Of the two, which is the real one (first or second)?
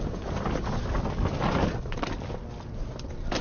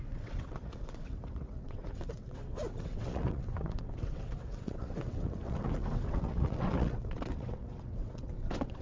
first